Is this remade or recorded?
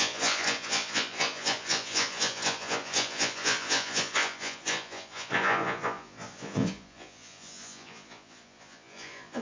remade